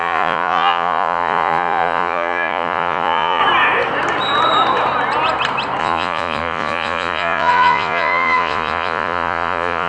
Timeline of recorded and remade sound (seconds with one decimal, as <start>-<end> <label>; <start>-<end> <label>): 0.0-3.4 remade; 3.4-5.8 recorded; 5.8-9.9 remade